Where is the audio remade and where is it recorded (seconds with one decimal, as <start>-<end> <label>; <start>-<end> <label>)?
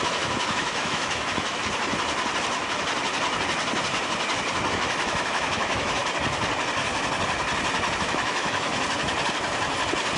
0.0-1.6 remade; 1.6-4.7 recorded; 4.7-6.0 remade; 6.0-8.0 recorded; 8.0-8.7 remade; 8.7-10.2 recorded